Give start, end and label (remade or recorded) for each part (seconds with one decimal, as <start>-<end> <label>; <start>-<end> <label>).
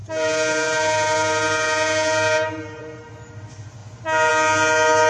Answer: 0.0-3.1 remade; 3.1-5.1 recorded